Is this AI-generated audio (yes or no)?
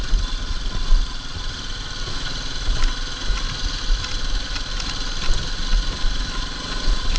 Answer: no